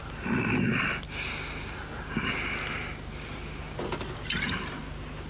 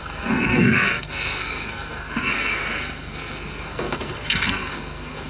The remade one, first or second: second